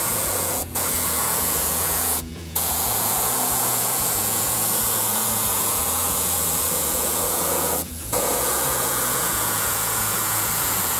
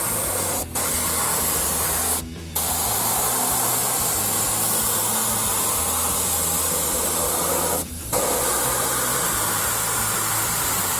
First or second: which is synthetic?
first